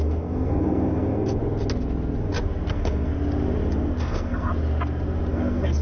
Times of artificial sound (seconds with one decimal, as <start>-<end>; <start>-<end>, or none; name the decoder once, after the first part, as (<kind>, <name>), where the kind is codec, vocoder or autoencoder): 0.0-1.4 (codec, SNAC); 2.7-3.1; 4.0-4.5; 5.3-5.8